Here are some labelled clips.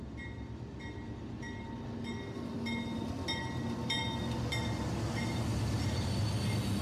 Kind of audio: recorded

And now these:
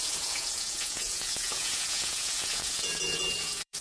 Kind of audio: remade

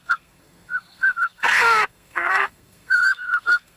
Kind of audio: remade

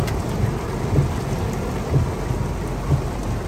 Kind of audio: recorded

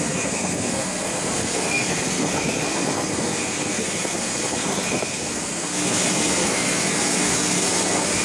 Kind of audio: remade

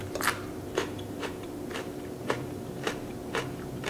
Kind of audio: remade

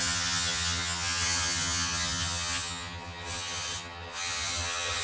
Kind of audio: remade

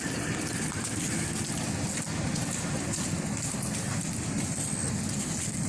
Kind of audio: recorded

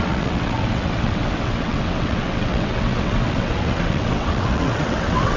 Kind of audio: remade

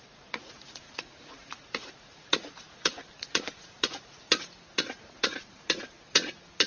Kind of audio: remade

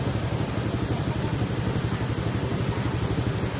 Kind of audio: recorded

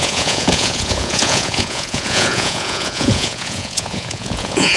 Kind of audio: remade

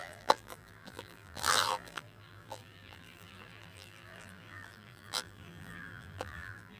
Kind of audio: remade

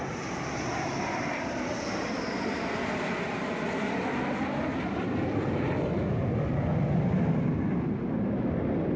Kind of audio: recorded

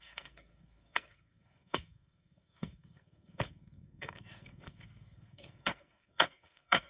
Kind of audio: remade